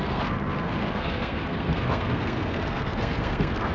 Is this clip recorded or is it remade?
remade